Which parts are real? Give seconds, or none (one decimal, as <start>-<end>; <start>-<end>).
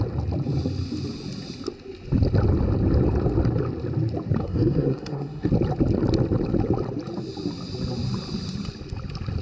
0.0-4.4; 5.5-9.4